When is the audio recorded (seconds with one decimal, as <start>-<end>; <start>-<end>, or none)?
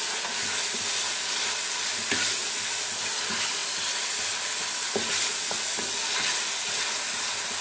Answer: 0.0-7.6